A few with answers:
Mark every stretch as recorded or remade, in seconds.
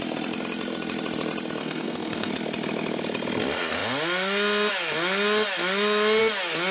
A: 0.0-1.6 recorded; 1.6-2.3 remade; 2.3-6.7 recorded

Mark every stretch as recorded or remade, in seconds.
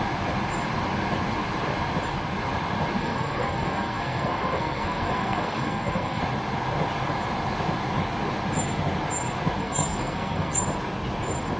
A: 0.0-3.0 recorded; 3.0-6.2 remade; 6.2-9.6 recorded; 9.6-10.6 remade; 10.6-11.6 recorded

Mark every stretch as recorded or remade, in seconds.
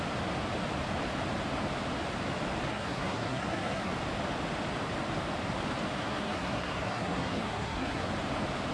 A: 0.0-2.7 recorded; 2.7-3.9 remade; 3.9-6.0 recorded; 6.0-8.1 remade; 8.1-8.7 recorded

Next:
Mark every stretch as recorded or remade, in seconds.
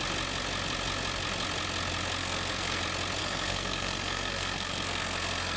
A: 0.0-2.2 recorded; 2.2-2.8 remade; 2.8-3.2 recorded; 3.2-5.6 remade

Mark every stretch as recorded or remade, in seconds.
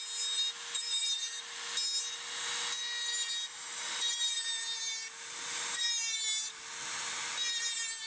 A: 0.0-8.1 recorded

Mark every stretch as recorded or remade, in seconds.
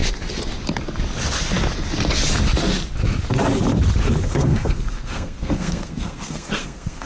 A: 0.0-4.3 recorded; 4.3-7.1 remade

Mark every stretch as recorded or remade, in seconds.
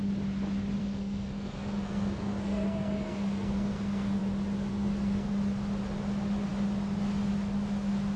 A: 0.0-0.8 recorded; 0.8-4.2 remade; 4.2-4.7 recorded; 4.7-5.3 remade; 5.3-8.2 recorded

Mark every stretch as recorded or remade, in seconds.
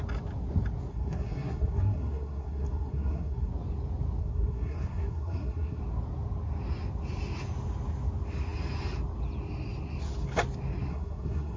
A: 0.0-0.9 recorded; 0.9-3.5 remade; 3.5-4.2 recorded; 4.2-5.8 remade; 5.8-10.9 recorded; 10.9-11.6 remade